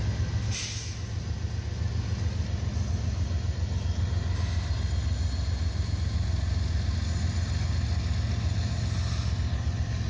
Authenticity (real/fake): real